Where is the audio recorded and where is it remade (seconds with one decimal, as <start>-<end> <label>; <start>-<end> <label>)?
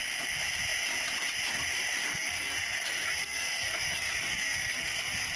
0.0-2.1 recorded; 2.1-5.4 remade